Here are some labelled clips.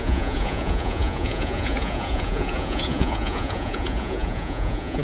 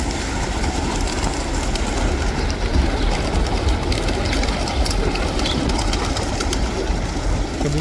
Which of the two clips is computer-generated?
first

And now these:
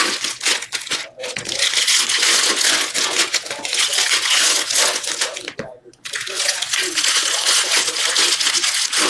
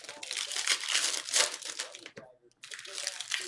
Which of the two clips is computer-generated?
first